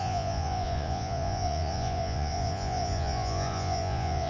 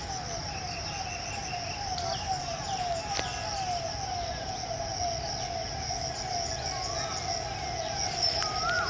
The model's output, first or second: first